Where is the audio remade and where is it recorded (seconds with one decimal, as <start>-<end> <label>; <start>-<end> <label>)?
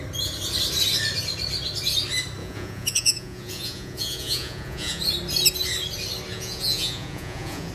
0.0-2.4 recorded; 2.4-5.0 remade; 5.0-6.3 recorded; 6.3-7.7 remade